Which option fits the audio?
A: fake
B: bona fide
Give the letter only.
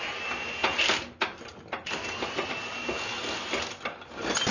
B